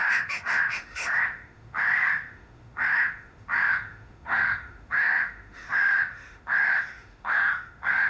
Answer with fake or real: fake